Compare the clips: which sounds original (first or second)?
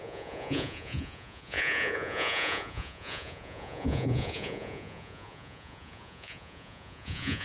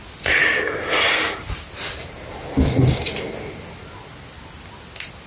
second